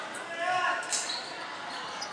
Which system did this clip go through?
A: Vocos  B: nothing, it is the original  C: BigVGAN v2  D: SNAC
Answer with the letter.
B